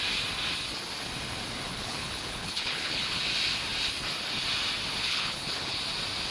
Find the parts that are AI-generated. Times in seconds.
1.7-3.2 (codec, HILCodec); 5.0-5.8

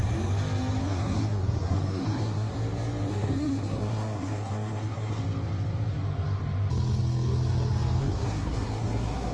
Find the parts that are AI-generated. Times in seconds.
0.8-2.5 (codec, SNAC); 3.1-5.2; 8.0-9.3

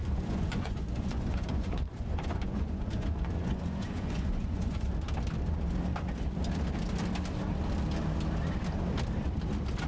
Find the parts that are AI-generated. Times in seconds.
0.0-4.9 (vocoder, Vocos)